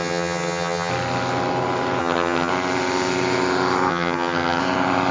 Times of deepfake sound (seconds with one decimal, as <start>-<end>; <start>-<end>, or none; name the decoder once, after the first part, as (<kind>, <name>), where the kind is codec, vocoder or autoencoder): 0.0-0.9 (vocoder, HiFi-GAN); 2.0-2.5; 3.9-4.6